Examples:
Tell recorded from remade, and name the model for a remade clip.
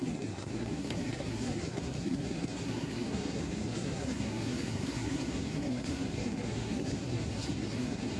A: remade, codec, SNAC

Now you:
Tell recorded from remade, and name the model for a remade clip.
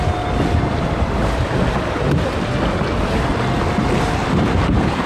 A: recorded